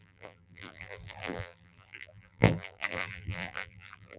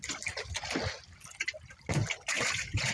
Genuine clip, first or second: second